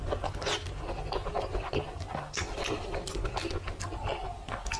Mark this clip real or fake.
real